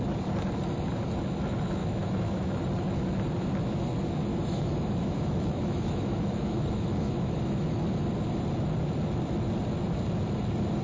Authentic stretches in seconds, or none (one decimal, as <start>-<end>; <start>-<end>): 0.0-1.8; 2.6-4.3; 7.7-10.8